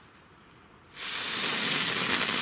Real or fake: real